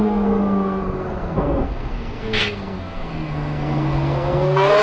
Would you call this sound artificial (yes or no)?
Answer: yes